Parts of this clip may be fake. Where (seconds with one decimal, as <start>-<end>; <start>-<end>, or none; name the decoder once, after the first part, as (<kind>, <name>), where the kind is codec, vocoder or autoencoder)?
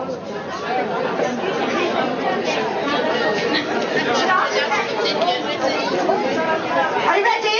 none